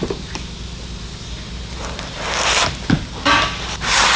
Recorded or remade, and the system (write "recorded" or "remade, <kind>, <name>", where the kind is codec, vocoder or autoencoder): recorded